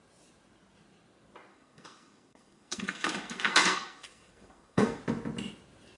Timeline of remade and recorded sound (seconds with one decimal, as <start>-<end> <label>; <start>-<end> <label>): 0.0-1.5 recorded; 1.5-5.0 remade; 5.0-6.0 recorded